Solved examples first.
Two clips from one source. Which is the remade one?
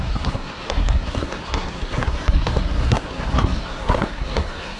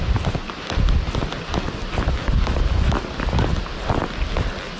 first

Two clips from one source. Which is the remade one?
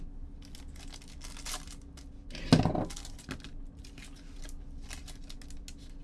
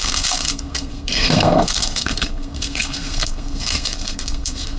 second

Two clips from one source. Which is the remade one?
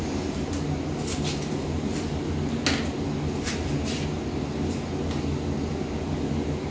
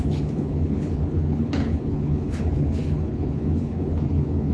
second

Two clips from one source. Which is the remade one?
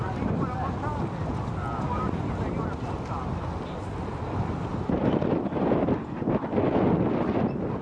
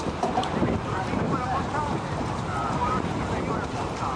second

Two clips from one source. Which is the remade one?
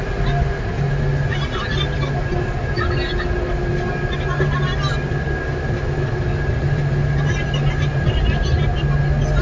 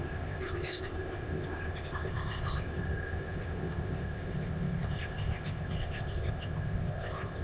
second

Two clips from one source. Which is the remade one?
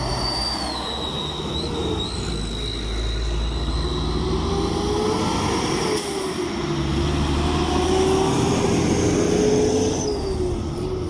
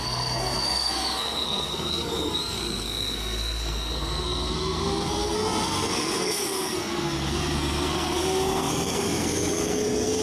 second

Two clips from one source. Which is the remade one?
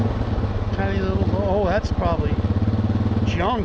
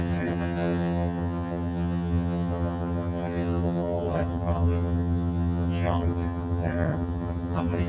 second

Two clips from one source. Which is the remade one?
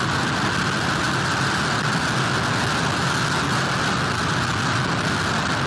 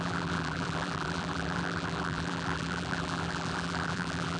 second